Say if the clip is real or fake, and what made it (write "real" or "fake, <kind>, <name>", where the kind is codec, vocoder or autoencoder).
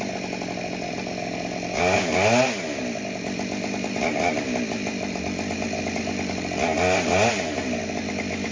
real